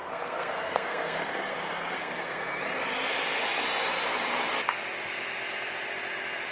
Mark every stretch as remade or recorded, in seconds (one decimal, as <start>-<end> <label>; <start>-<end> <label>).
0.0-2.4 remade; 2.4-6.5 recorded